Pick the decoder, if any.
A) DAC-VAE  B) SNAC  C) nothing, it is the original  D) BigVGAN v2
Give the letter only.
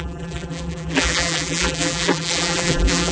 D